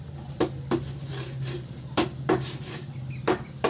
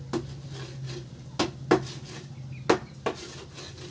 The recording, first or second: second